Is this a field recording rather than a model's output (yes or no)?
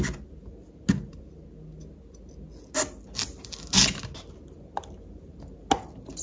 yes